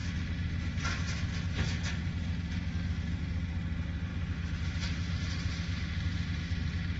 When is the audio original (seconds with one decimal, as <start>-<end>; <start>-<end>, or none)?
0.0-7.0